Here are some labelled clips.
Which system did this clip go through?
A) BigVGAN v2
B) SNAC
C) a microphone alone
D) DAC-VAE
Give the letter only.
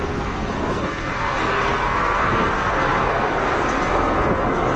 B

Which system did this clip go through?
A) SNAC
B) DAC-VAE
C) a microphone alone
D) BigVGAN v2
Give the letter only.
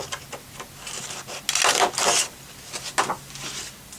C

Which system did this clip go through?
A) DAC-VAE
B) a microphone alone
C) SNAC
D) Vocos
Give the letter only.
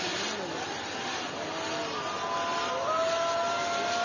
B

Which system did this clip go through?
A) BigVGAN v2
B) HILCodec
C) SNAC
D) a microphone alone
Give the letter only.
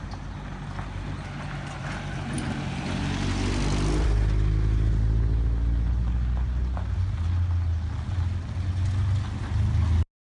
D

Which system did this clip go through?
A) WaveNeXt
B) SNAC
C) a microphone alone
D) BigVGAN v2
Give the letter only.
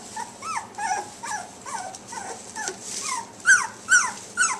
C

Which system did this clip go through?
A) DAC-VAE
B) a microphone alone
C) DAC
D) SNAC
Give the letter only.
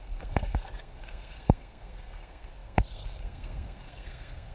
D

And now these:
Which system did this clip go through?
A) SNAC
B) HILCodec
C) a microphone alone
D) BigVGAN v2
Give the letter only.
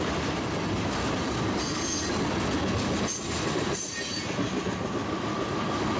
C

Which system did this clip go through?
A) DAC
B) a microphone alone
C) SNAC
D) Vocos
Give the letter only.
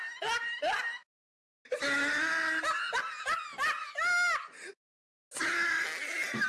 B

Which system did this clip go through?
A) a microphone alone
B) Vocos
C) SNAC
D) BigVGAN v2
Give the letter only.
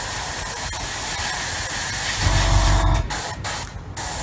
A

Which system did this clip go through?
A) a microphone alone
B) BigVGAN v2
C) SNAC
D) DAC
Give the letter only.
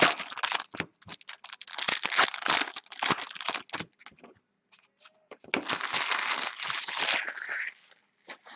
A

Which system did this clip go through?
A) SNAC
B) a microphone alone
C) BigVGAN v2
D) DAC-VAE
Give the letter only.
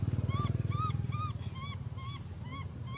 B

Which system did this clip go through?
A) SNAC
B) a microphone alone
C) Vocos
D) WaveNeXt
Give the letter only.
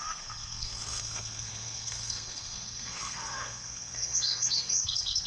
A